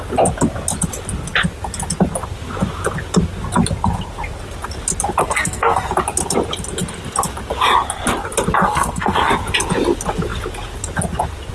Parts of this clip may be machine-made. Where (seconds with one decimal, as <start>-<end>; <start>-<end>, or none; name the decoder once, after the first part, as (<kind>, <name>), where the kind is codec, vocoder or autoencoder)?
5.2-5.9 (codec, SNAC); 8.6-9.3